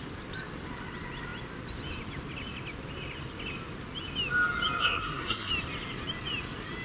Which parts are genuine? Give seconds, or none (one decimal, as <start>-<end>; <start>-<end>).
0.0-4.8; 5.5-6.8